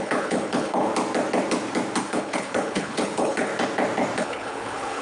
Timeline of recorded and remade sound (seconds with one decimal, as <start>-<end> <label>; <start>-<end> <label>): 0.0-0.9 remade; 0.9-2.1 recorded; 2.1-3.5 remade; 3.5-4.2 recorded; 4.2-5.0 remade